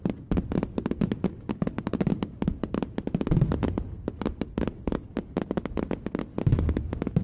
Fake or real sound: real